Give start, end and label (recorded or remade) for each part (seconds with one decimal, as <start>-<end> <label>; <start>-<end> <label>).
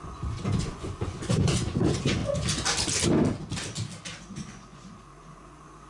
0.0-2.2 remade; 2.2-4.2 recorded; 4.2-5.9 remade